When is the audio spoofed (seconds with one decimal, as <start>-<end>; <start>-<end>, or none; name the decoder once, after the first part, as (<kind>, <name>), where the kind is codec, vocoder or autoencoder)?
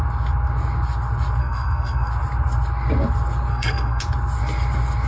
1.4-2.1 (codec, SNAC); 3.5-4.0